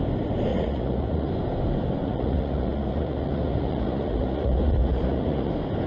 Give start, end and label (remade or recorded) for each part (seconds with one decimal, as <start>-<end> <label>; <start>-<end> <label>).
0.0-0.5 recorded; 0.5-1.3 remade; 1.3-2.0 recorded; 2.0-5.5 remade; 5.5-5.9 recorded